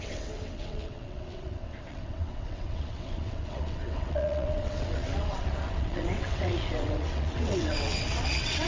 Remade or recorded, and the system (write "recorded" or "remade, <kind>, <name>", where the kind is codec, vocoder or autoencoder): remade, vocoder, WaveNeXt